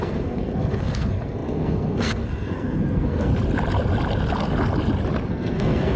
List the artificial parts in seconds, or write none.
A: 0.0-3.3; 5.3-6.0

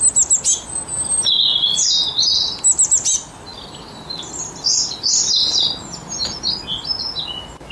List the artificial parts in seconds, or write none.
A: none

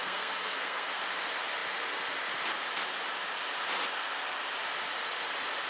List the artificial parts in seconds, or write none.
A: 0.0-1.0